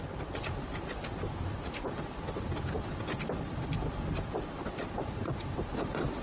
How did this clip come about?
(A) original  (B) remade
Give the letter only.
B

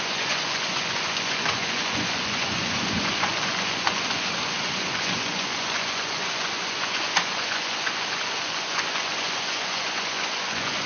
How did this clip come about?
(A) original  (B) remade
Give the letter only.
B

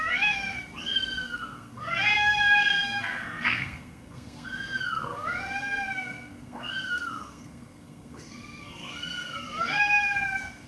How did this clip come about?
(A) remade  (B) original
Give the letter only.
A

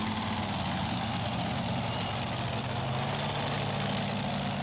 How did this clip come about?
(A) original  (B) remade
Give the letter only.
A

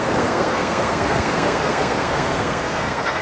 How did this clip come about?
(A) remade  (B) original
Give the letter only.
A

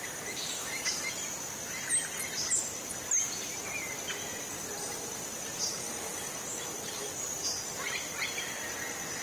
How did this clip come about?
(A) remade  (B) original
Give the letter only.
B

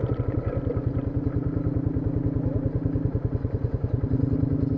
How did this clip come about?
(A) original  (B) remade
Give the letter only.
A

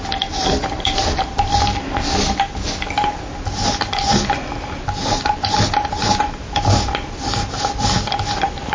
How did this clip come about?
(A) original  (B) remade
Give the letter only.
A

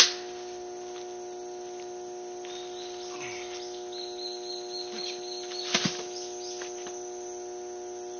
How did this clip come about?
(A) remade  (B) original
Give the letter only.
B